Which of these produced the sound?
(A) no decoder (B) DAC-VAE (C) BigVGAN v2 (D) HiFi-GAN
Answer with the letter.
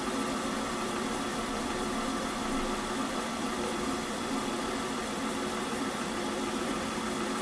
C